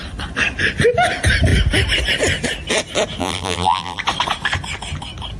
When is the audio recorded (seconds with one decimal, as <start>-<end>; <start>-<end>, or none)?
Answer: 0.0-3.2; 4.0-5.4